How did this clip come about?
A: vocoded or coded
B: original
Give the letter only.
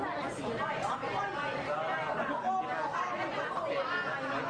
B